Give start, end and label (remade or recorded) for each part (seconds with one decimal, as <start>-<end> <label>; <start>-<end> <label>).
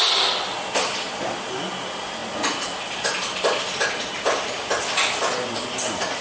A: 0.0-6.2 recorded